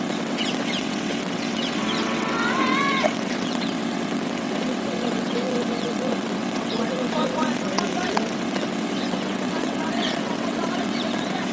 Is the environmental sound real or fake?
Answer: fake